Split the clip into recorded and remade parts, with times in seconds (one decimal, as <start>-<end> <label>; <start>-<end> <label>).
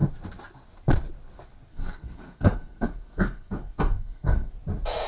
0.0-1.7 recorded; 1.7-4.5 remade; 4.5-5.1 recorded